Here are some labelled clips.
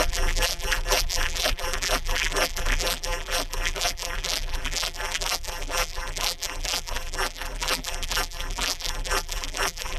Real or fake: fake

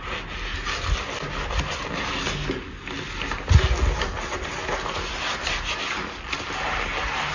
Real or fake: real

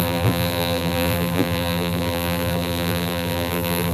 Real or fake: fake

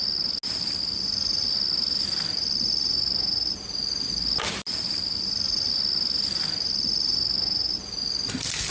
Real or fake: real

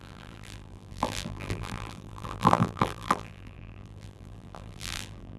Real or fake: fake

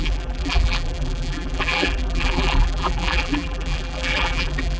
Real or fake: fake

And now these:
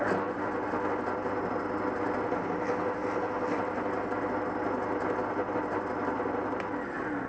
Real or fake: real